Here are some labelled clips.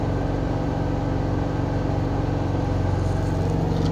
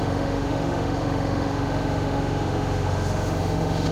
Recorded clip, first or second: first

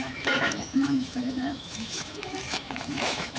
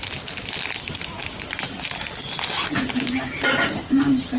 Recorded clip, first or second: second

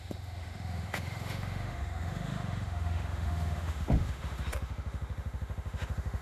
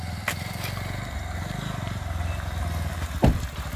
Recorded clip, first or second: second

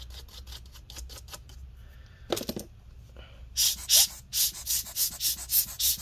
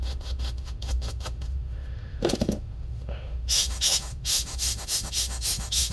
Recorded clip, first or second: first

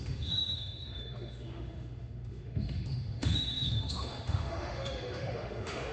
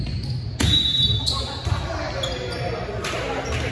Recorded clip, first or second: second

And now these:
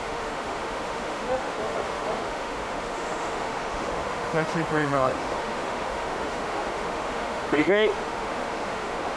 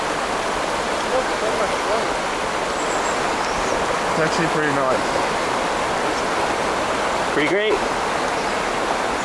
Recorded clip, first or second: second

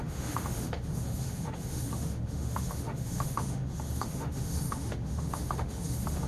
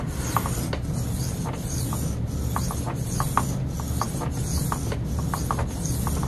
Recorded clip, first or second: second